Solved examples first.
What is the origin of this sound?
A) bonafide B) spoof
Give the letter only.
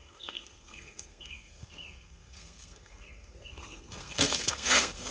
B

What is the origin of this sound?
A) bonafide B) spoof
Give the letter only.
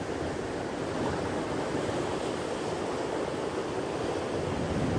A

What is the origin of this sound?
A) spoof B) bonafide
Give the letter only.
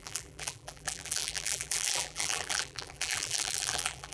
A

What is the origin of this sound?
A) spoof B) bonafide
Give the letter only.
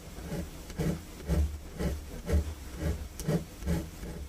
A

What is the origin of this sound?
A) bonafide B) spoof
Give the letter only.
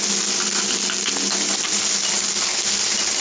A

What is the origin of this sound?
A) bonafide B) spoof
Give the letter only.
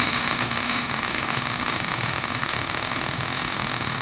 B